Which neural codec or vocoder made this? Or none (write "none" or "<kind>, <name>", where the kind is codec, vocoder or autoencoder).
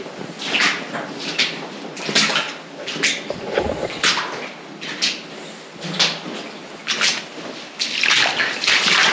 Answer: none